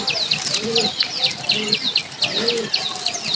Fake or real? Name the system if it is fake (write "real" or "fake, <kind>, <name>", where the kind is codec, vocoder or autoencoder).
real